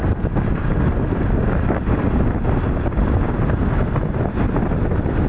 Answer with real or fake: real